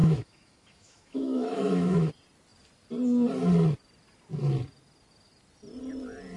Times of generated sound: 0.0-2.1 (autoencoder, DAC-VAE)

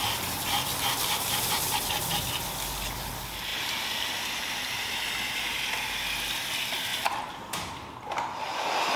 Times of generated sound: none

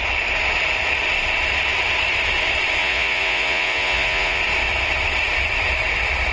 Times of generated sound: 2.8-4.4 (vocoder, Vocos)

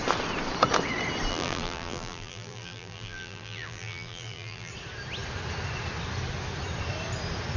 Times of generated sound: 1.3-4.7 (vocoder, BigVGAN v2)

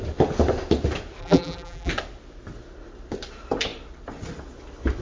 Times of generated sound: 1.2-1.9 (vocoder, BigVGAN v2)

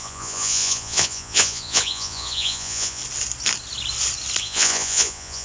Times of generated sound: 0.0-3.0 (vocoder, Vocos); 4.4-5.4